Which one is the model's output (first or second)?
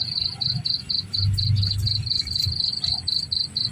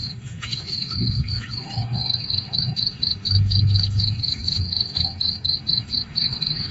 second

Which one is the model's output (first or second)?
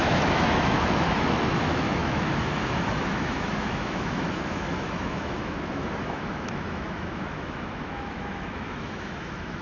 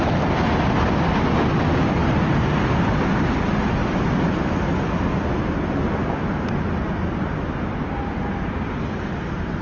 first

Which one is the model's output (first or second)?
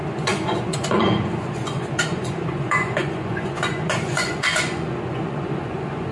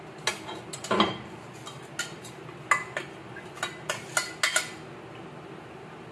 first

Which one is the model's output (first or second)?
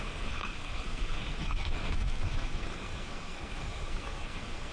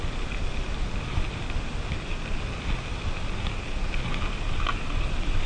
first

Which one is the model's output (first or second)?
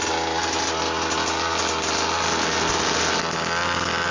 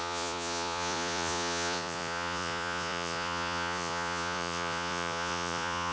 second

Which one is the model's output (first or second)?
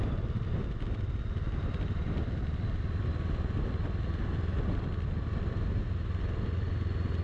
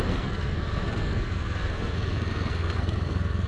second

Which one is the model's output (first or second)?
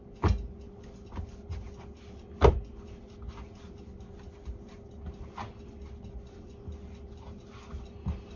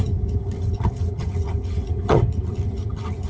second